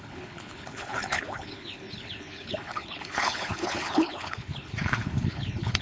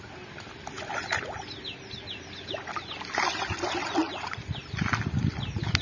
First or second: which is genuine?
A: second